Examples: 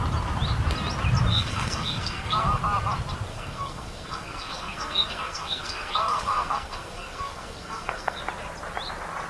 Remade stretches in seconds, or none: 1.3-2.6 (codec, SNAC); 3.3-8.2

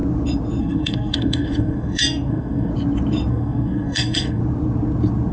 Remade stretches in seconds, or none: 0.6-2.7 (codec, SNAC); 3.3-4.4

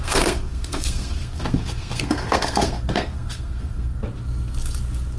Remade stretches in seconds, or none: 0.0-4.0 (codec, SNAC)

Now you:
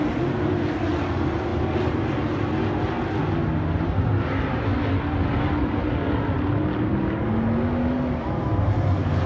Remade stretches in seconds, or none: none

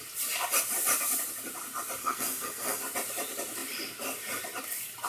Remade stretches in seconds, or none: 2.0-2.8 (codec, SNAC)

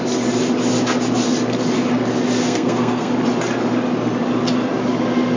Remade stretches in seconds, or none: 2.4-3.1 (codec, SNAC)